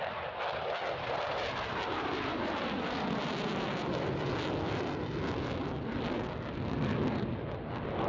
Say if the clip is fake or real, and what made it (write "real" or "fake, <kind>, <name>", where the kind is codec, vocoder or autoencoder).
real